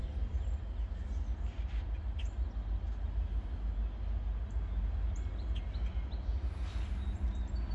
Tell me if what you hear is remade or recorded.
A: recorded